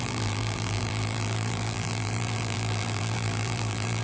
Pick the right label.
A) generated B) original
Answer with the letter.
A